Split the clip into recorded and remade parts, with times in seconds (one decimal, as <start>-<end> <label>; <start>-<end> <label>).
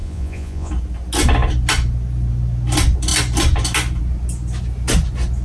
0.0-0.7 remade; 0.7-5.4 recorded